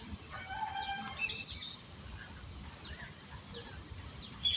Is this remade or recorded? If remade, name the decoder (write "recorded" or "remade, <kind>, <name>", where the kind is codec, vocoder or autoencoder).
recorded